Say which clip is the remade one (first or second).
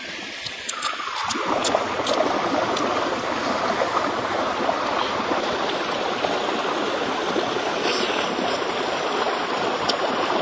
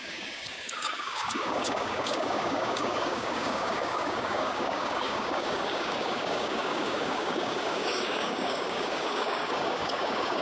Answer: second